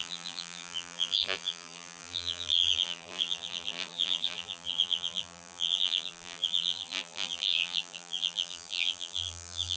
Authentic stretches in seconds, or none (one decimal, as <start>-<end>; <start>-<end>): none